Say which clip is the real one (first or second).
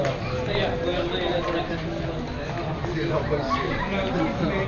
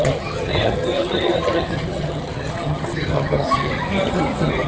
first